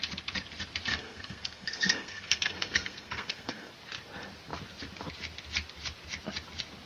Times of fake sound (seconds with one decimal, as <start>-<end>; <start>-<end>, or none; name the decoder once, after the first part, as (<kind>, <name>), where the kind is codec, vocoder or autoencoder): 0.9-3.7 (codec, SNAC)